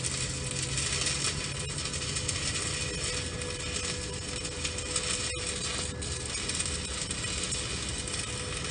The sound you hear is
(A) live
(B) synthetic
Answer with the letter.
A